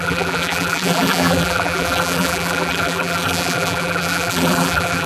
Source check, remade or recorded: remade